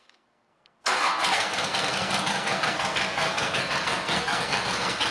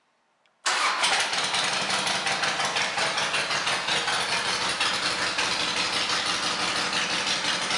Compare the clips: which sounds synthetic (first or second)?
first